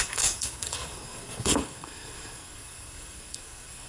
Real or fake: fake